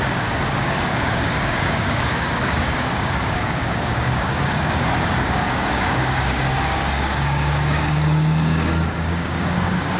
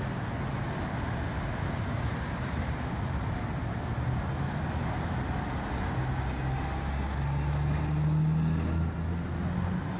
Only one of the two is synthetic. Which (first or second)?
first